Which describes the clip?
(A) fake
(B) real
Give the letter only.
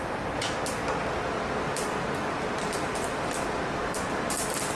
B